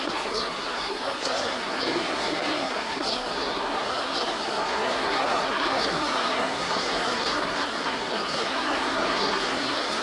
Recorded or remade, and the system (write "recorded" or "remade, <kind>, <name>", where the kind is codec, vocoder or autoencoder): remade, codec, SNAC